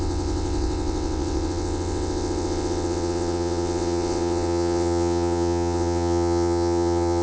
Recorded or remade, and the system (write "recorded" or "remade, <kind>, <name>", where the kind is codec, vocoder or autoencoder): remade, vocoder, WaveNeXt